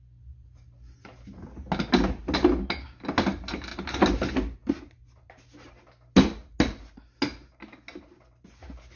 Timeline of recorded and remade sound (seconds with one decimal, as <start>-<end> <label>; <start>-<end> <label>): 0.0-9.0 recorded